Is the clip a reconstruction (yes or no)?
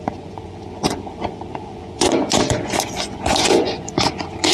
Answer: yes